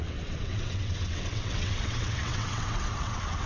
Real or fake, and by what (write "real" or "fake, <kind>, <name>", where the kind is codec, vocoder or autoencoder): fake, vocoder, WaveNeXt